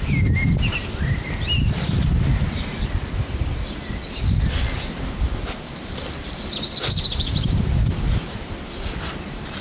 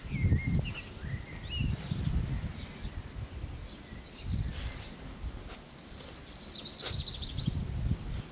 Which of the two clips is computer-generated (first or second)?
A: first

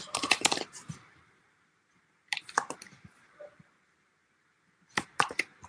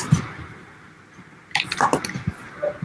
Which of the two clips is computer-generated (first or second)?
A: first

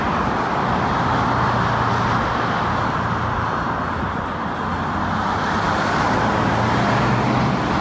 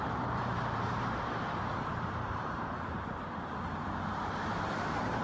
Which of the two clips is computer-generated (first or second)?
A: second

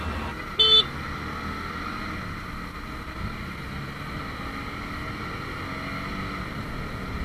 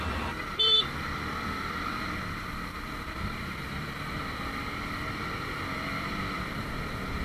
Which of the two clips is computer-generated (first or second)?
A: second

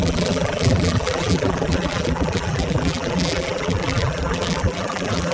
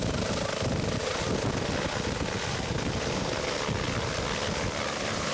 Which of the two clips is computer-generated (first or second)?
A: first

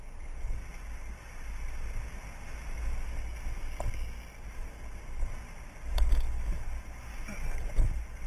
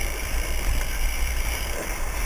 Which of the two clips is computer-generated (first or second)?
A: second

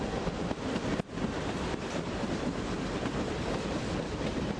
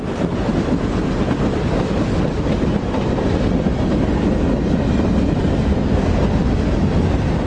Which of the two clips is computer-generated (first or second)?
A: first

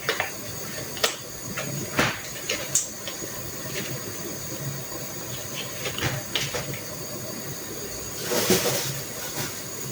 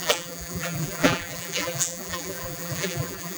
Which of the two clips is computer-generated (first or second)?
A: second